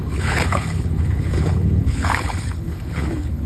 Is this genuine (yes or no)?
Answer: no